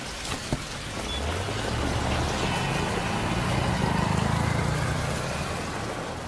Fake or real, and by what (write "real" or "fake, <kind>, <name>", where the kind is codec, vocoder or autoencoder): real